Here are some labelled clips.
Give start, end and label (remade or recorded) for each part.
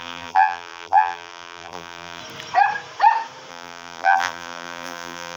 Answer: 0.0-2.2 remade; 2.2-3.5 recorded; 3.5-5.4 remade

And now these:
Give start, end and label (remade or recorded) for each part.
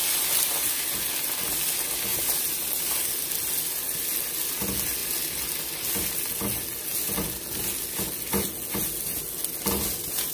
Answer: 0.0-1.3 remade; 1.3-10.3 recorded